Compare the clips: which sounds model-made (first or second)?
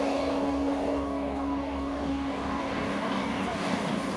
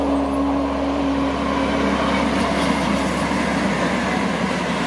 first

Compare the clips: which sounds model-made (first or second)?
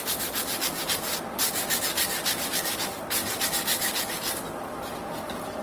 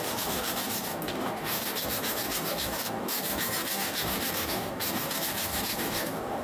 second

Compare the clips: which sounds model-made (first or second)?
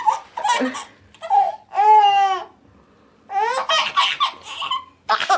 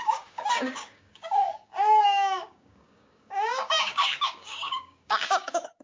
second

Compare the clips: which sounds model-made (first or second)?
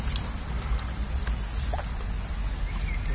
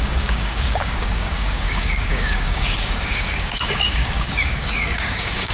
second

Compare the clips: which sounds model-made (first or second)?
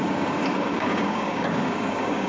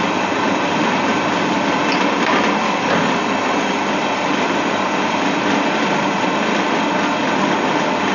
first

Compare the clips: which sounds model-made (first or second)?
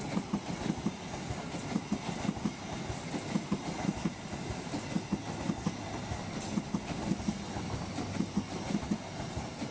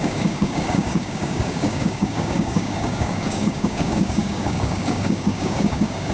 second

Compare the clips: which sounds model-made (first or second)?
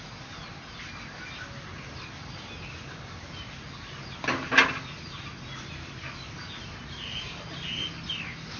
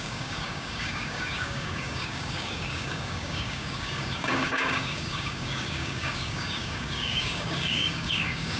second